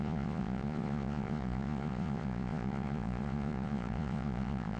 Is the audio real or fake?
fake